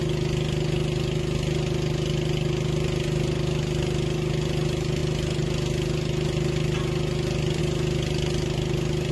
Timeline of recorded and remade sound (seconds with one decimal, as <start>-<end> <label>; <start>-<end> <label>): 0.0-9.1 recorded